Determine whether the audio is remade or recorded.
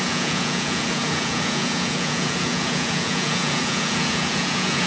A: remade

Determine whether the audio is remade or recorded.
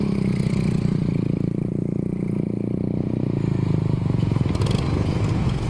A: recorded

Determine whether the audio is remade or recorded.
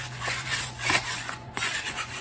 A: remade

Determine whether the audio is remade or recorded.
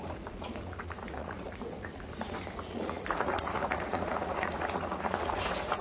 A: remade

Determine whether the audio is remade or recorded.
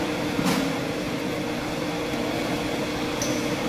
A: recorded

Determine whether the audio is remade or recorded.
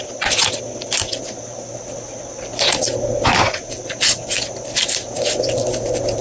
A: recorded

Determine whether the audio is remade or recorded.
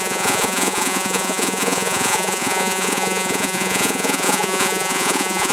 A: remade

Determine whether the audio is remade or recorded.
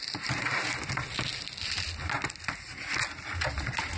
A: recorded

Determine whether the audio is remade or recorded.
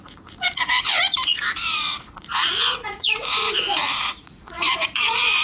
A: remade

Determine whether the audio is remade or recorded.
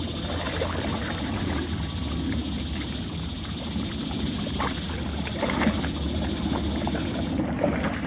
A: recorded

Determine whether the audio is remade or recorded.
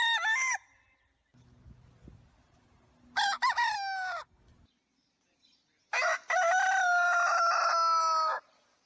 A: recorded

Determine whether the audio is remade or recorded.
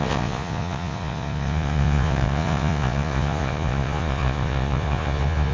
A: remade